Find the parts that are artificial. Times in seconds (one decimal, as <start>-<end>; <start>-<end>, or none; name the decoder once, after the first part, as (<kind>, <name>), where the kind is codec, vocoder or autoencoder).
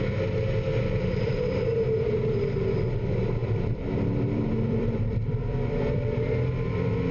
0.7-1.3 (vocoder, BigVGAN v2); 3.4-6.3